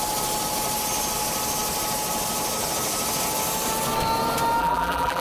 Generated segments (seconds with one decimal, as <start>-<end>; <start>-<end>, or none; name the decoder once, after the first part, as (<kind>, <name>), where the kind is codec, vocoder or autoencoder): 4.6-5.2 (vocoder, BigVGAN v2)